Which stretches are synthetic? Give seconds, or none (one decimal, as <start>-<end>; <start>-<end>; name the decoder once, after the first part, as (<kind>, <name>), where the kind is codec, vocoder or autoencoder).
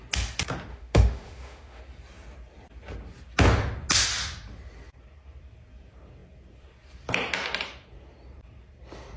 0.7-1.8 (autoencoder, DAC-VAE)